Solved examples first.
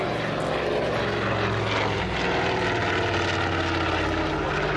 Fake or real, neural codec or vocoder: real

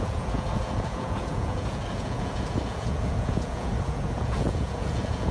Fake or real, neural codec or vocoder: fake, vocoder, Vocos